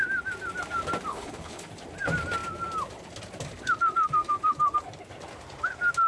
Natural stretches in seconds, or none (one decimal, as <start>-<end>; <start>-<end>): 0.0-1.1; 1.7-6.1

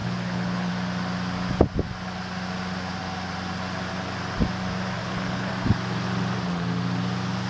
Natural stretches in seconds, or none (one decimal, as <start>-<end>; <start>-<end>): 0.7-5.0; 5.5-7.5

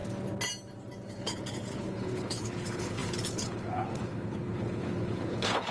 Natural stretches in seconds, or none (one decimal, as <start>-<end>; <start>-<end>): 0.0-1.1

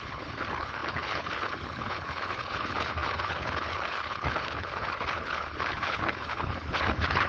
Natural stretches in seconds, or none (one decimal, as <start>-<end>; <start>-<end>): none

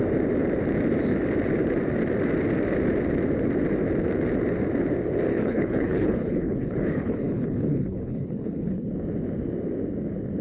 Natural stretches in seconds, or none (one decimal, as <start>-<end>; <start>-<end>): 0.0-5.3; 8.9-10.4

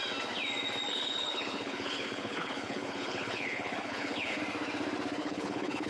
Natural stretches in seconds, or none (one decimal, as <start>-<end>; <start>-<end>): 0.0-0.9; 4.4-5.2